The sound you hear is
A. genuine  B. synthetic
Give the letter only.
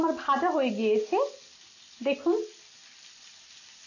A